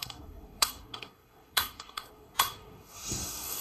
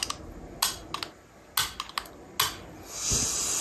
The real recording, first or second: second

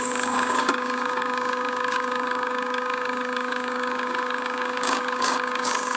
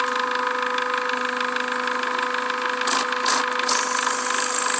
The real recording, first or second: second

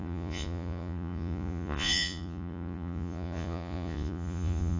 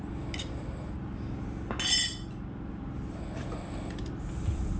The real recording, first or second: second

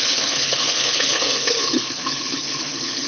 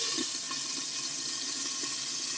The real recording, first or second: second